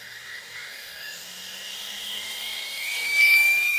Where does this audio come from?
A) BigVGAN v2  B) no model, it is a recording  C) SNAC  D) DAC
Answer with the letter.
D